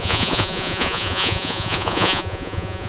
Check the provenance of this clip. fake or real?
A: fake